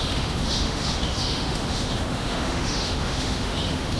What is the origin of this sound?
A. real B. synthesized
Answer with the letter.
B